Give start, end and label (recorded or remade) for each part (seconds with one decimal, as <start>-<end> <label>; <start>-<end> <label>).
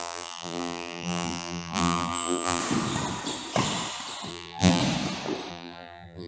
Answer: 0.0-2.6 remade; 2.6-4.3 recorded; 4.3-4.8 remade; 4.8-5.5 recorded; 5.5-6.3 remade